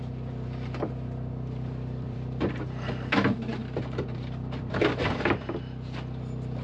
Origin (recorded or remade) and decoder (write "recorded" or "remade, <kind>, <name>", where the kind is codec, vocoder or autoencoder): remade, vocoder, BigVGAN v2